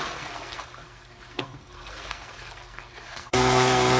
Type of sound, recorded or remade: remade